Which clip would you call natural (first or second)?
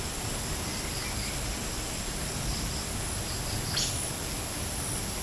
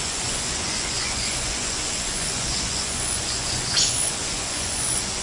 first